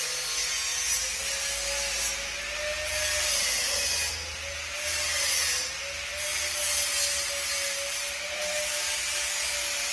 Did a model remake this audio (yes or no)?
no